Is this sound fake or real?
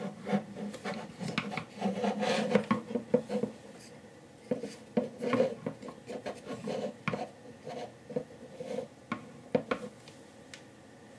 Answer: real